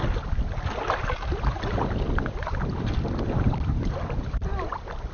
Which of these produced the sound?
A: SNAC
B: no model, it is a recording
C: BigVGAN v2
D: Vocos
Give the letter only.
B